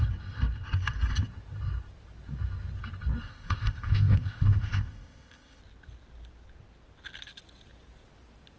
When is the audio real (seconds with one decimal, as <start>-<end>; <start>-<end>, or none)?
0.0-3.2; 5.6-8.6